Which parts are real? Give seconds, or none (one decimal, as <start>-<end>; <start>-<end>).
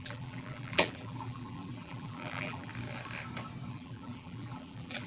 2.7-3.7